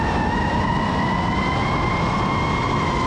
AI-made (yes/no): no